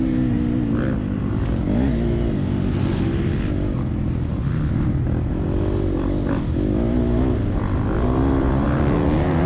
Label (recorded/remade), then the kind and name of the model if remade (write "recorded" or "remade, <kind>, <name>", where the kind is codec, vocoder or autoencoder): recorded